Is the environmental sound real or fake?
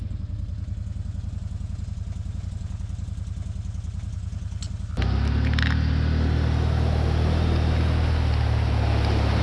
real